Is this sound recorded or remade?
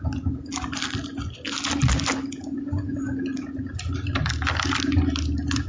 recorded